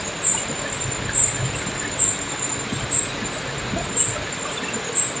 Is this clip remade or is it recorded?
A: remade